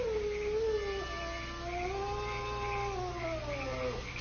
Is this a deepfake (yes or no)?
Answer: no